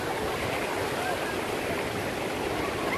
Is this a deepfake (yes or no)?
no